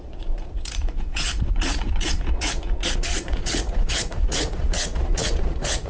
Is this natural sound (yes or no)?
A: no